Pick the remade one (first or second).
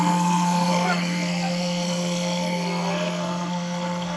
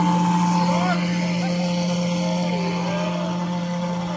first